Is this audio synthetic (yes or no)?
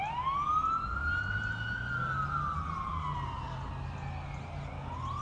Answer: no